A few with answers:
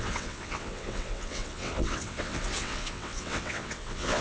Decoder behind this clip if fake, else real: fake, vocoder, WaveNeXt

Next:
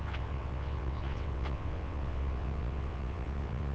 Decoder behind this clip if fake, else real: fake, vocoder, WaveNeXt